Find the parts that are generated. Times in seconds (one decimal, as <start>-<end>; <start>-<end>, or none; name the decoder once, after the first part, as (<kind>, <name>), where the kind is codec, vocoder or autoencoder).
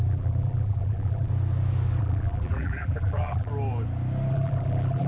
0.0-1.3 (vocoder, BigVGAN v2); 2.0-3.5; 4.3-5.1